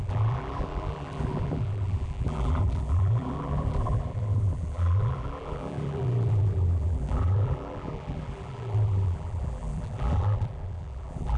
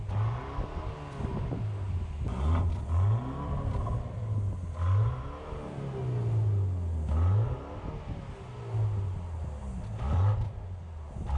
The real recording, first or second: second